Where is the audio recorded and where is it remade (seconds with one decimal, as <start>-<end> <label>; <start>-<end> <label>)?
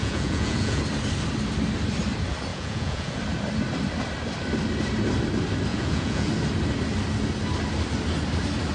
0.0-0.8 remade; 0.8-2.5 recorded; 2.5-3.2 remade; 3.2-5.7 recorded; 5.7-6.3 remade; 6.3-8.7 recorded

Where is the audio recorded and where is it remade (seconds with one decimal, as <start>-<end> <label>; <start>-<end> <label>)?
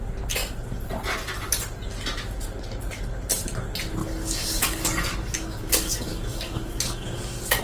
0.0-4.0 recorded; 4.0-7.6 remade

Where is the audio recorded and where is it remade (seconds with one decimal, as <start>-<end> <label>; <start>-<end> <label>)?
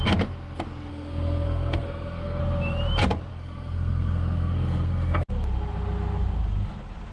0.0-0.9 recorded; 0.9-2.4 remade; 2.4-3.3 recorded; 3.3-5.3 remade; 5.3-7.1 recorded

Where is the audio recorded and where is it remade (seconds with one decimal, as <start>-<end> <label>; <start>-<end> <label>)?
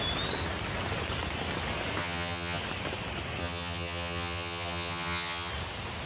0.0-2.0 recorded; 2.0-2.6 remade; 2.6-3.4 recorded; 3.4-5.5 remade; 5.5-6.1 recorded